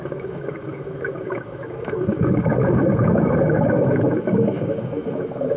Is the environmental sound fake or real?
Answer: fake